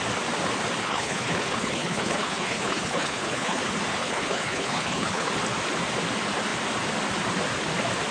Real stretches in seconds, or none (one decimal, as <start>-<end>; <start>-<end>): 0.0-0.8; 3.6-4.0; 5.3-8.1